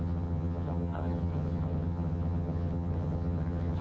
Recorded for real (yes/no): no